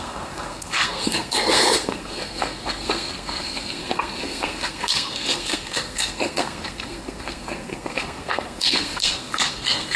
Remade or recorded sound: remade